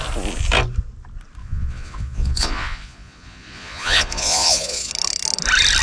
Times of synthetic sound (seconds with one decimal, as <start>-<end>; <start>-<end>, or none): 1.4-4.9